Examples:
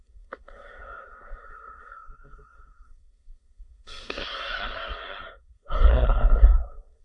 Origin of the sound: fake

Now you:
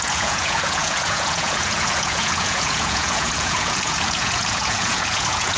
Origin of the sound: fake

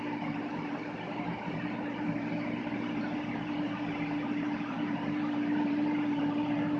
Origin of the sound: fake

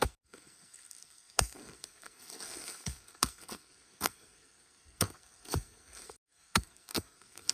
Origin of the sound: fake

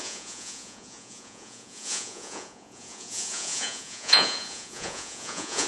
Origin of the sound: fake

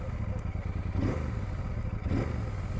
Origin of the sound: real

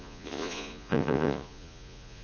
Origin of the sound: fake